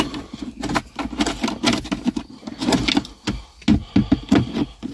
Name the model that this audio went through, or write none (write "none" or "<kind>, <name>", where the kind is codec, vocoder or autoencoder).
none